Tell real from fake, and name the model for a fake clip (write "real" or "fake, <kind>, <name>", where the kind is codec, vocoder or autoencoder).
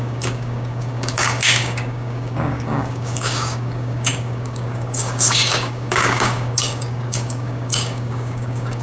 fake, codec, DAC